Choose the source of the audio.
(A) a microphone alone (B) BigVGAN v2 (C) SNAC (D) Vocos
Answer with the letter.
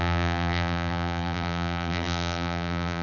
B